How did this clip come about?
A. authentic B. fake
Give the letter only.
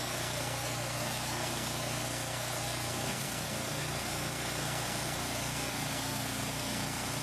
B